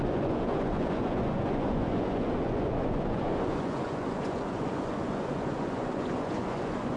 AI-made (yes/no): yes